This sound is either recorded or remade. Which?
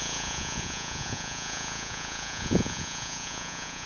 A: remade